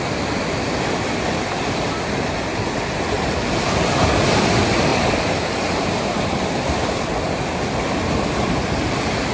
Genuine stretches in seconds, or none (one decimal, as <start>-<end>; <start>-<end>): 4.9-6.1